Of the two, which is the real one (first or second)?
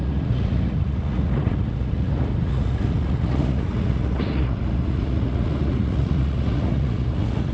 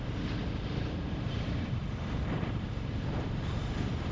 second